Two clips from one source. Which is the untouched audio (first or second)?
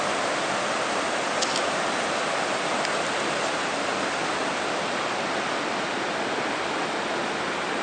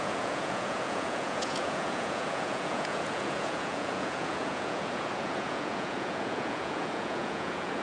first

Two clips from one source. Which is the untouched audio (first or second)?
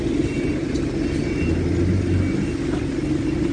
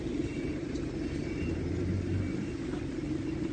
first